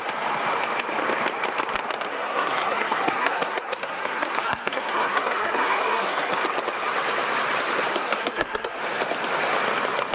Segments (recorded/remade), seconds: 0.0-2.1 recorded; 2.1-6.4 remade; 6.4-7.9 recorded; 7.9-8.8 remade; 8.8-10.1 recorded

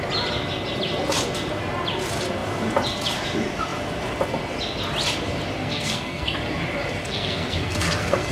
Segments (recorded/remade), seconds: 0.0-5.6 recorded; 5.6-6.4 remade; 6.4-7.0 recorded; 7.0-8.3 remade

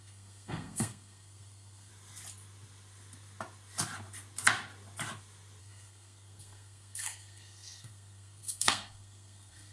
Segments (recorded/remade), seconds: 0.0-1.9 remade; 1.9-5.6 recorded; 5.6-9.7 remade

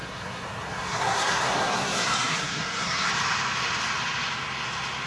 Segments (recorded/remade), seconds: 0.0-3.1 remade; 3.1-5.1 recorded

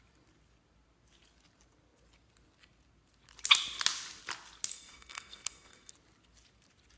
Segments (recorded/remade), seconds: 0.0-4.7 recorded; 4.7-5.9 remade; 5.9-7.0 recorded

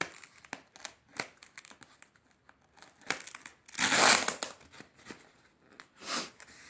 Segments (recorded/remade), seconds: 0.0-6.7 recorded

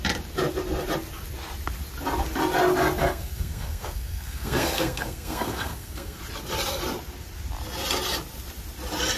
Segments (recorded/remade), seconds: 0.0-3.0 recorded; 3.0-6.2 remade; 6.2-9.2 recorded